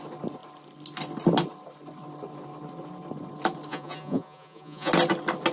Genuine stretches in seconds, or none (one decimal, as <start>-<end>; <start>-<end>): 0.0-3.7; 4.9-5.5